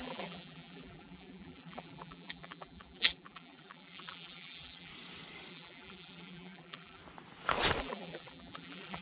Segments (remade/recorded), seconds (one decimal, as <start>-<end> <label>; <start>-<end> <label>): 0.0-4.9 remade; 4.9-5.5 recorded; 5.5-7.0 remade; 7.0-7.8 recorded; 7.8-9.0 remade